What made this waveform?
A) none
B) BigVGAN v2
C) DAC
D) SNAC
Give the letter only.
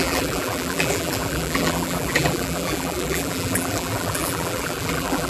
B